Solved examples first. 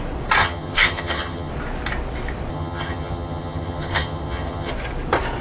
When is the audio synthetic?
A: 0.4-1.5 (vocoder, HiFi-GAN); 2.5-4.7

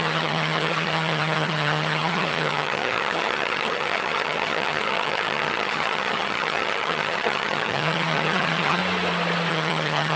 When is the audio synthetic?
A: 0.0-8.8 (vocoder, HiFi-GAN); 9.5-10.2

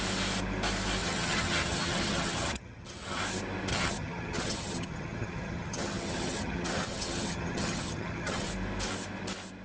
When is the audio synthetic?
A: 1.0-3.2 (vocoder, HiFi-GAN); 3.7-8.5

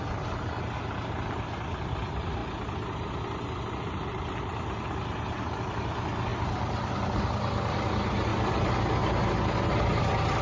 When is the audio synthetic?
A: none

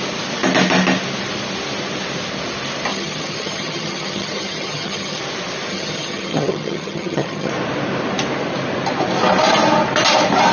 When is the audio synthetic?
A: 2.9-5.2 (vocoder, HiFi-GAN); 5.7-7.5

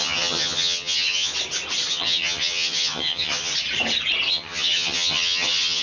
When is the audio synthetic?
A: 0.0-1.3 (vocoder, HiFi-GAN); 1.9-3.5; 4.3-5.8

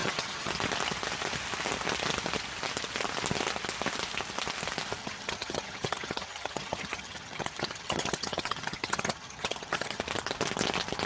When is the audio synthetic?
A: 0.0-0.5 (vocoder, HiFi-GAN); 5.0-10.0

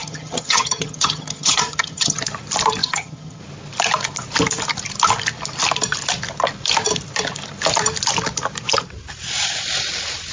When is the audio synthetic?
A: 0.0-2.2 (vocoder, HiFi-GAN); 2.8-3.4